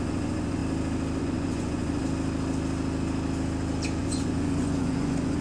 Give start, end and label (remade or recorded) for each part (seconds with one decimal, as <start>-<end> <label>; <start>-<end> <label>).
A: 0.0-0.6 remade; 0.6-1.2 recorded; 1.2-2.0 remade; 2.0-4.0 recorded; 4.0-5.4 remade